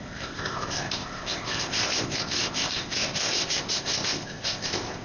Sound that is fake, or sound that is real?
fake